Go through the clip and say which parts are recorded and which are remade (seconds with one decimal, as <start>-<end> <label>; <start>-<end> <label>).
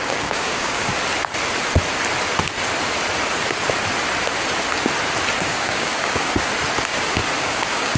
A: 0.0-0.9 remade; 0.9-5.4 recorded; 5.4-6.5 remade; 6.5-7.4 recorded; 7.4-8.0 remade